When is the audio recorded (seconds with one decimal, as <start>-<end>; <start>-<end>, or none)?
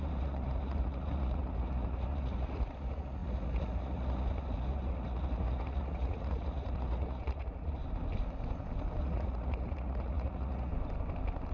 7.8-9.0; 10.7-11.5